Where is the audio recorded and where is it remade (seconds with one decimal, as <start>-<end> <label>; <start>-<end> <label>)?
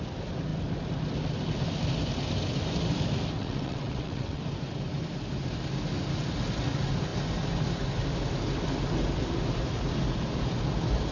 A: 0.0-3.4 recorded; 3.4-4.4 remade; 4.4-11.1 recorded